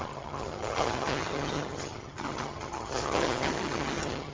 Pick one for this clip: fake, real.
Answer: fake